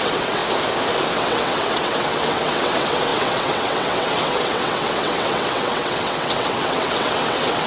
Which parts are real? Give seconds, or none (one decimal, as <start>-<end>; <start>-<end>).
0.4-1.1